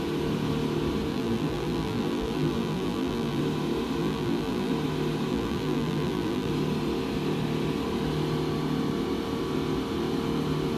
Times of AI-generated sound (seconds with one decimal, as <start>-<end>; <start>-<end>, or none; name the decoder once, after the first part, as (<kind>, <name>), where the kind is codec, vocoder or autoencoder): 1.1-3.4 (vocoder, BigVGAN v2); 4.0-4.7; 5.3-6.5